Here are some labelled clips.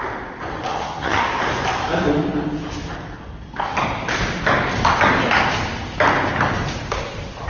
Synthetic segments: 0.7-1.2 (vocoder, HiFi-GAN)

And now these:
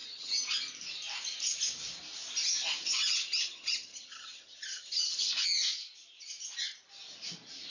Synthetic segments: 0.0-0.5 (vocoder, HiFi-GAN); 2.6-5.3